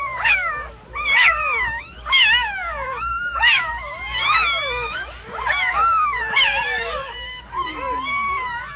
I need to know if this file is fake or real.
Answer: fake